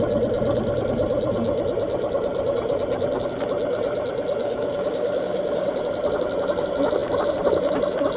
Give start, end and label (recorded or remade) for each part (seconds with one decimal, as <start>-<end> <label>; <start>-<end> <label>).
0.0-4.4 recorded; 4.4-5.8 remade; 5.8-8.2 recorded